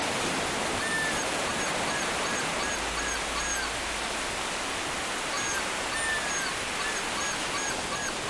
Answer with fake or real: real